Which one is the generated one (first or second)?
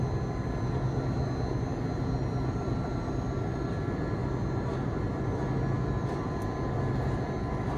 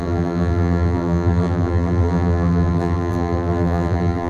second